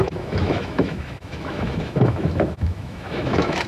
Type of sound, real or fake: fake